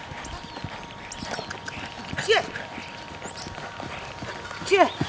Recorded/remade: recorded